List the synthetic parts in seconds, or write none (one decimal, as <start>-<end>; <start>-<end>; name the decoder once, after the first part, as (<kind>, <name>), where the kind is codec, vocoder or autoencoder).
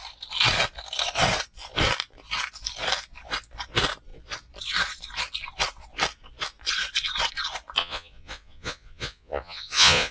7.8-10.1 (vocoder, Vocos)